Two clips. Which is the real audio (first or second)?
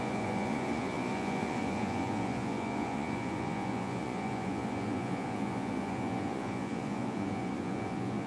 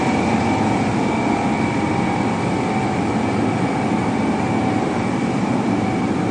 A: second